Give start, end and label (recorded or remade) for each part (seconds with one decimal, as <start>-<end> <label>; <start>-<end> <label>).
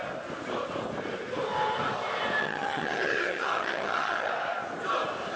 0.0-2.4 recorded; 2.4-4.3 remade; 4.3-5.4 recorded